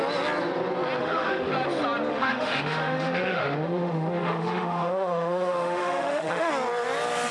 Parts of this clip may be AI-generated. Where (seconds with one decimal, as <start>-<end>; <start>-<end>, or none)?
1.0-1.5; 2.1-6.5